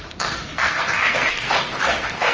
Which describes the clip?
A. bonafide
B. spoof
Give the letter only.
B